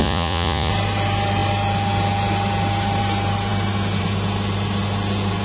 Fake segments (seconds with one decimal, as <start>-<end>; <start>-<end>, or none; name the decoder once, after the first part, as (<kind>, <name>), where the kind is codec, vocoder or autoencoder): 0.0-0.7 (vocoder, Vocos)

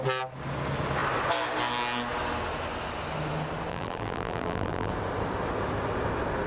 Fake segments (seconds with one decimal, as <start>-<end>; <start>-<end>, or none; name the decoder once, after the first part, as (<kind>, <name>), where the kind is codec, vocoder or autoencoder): 3.7-4.9 (vocoder, BigVGAN v2)

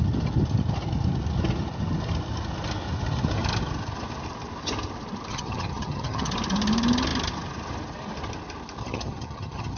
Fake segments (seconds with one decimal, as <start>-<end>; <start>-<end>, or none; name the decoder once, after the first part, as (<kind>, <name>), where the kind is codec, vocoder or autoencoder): 5.3-6.3 (vocoder, HiFi-GAN); 8.8-9.8

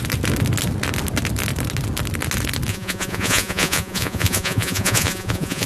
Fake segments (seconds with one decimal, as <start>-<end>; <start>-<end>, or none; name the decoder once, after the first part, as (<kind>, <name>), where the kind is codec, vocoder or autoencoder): 2.7-5.7 (vocoder, Vocos)

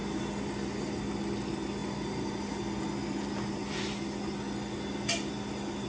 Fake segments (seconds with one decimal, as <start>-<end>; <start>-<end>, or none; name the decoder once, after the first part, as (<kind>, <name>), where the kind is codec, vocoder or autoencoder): none

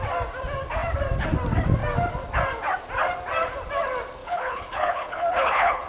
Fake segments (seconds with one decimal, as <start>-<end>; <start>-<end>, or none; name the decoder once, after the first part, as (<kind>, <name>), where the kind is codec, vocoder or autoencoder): 4.2-5.9 (codec, HILCodec)

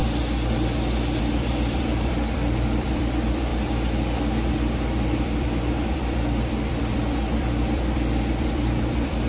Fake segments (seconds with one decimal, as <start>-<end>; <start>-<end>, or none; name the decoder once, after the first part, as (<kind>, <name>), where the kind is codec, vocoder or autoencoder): 1.2-3.5 (vocoder, BigVGAN v2); 5.2-9.3